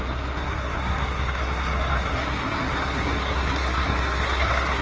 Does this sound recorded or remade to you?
remade